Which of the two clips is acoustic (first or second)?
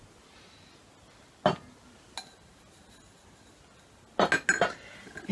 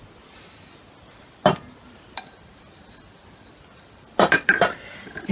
first